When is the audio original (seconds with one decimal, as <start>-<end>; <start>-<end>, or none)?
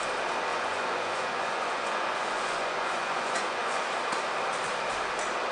0.0-0.5; 3.8-5.5